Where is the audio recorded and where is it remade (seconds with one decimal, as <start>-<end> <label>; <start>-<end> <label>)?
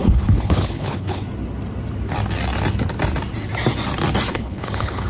0.0-1.2 remade; 1.2-4.3 recorded; 4.3-5.1 remade